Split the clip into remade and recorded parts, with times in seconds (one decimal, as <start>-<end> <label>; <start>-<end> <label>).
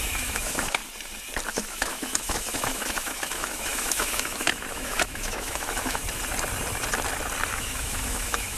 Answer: 0.0-0.8 remade; 0.8-1.5 recorded; 1.5-6.0 remade; 6.0-7.5 recorded; 7.5-8.6 remade